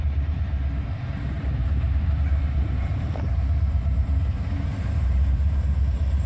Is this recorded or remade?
remade